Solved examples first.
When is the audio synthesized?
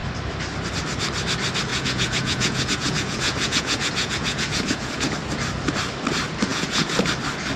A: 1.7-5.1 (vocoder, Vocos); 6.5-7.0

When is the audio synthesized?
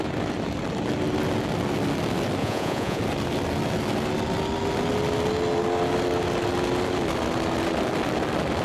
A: 2.4-3.0 (vocoder, Vocos)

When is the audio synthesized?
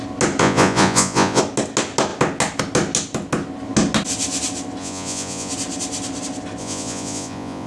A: 0.4-1.4 (vocoder, Vocos); 4.8-5.5; 6.6-7.7